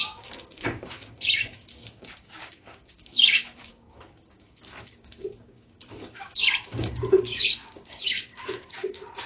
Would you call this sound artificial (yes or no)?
yes